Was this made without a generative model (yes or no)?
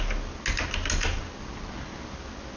yes